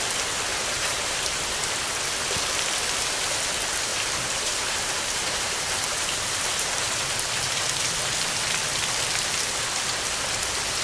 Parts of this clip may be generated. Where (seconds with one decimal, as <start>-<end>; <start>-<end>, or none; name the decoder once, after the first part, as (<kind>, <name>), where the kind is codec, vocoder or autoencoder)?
0.5-1.4 (vocoder, BigVGAN v2); 3.9-7.3